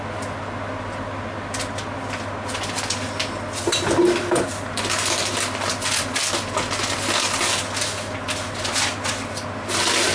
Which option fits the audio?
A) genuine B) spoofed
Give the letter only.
A